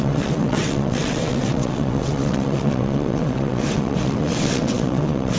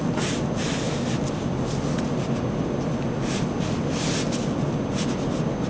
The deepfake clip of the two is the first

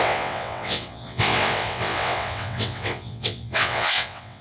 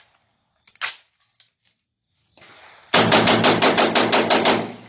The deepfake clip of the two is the first